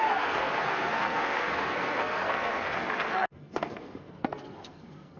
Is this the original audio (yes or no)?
no